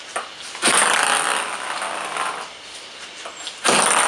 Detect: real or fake real